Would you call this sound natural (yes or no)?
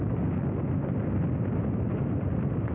yes